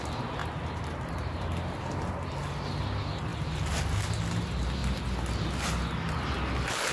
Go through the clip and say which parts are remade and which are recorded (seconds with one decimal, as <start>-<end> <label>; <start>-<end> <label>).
0.0-6.9 recorded